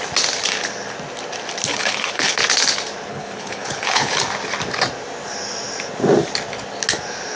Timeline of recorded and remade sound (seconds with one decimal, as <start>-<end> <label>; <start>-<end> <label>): 0.0-1.7 recorded; 1.7-2.3 remade; 2.3-3.1 recorded; 3.1-4.2 remade; 4.2-7.4 recorded